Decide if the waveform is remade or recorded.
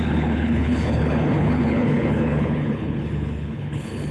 remade